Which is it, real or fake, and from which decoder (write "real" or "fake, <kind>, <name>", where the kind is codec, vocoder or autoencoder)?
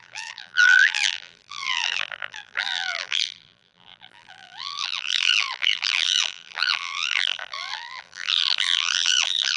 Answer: fake, vocoder, BigVGAN v2